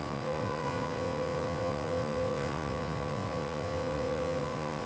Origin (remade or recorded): remade